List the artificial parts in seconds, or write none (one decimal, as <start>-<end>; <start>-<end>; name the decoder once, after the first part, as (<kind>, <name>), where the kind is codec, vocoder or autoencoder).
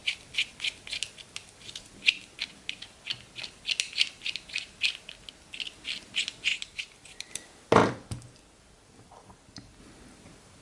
6.5-7.3 (vocoder, BigVGAN v2); 7.8-9.8